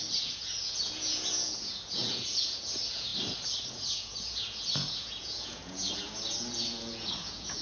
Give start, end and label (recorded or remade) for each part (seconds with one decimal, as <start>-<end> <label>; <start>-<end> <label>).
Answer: 0.0-3.1 remade; 3.1-3.7 recorded; 3.7-7.6 remade